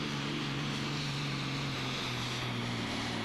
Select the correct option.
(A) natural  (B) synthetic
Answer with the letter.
B